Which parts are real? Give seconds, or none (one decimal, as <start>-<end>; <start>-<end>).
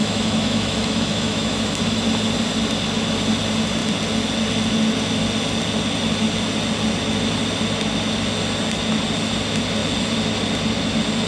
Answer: 1.7-11.3